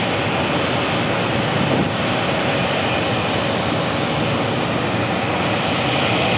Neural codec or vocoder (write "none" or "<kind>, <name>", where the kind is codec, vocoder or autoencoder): none